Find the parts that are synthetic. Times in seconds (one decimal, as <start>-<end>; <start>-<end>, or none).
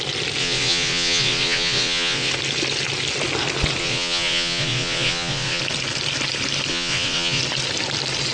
0.4-2.3; 3.8-5.6; 6.7-7.4